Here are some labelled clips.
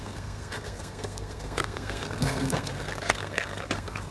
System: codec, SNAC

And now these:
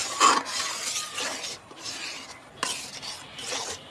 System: none